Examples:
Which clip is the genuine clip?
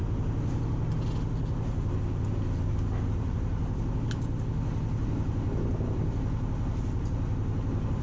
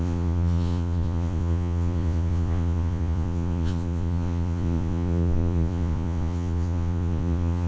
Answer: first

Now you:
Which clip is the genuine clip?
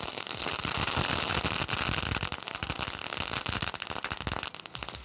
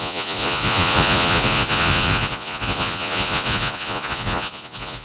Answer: first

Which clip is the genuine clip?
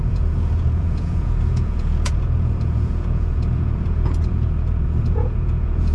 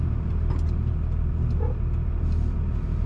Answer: second